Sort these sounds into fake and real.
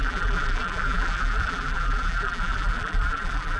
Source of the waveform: fake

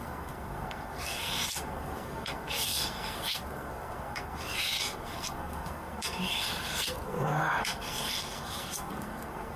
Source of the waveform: fake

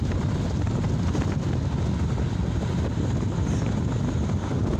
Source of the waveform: real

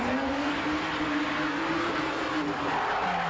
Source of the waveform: real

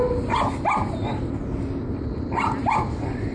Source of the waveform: real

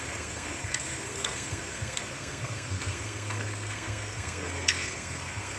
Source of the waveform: fake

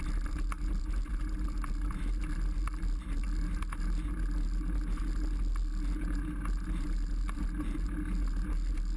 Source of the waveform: real